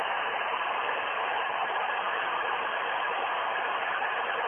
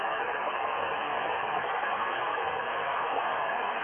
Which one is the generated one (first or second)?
second